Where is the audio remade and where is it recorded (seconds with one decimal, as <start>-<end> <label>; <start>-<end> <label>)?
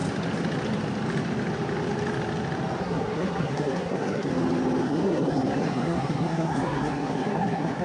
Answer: 0.0-2.8 recorded; 2.8-4.3 remade; 4.3-4.8 recorded; 4.8-7.8 remade